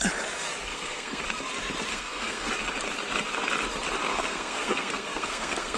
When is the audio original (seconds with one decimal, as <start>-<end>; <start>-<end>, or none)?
0.0-0.7; 1.2-1.9; 2.5-4.1